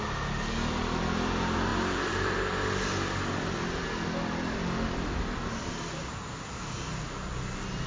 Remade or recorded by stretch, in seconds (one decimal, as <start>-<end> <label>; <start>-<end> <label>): 0.0-7.9 recorded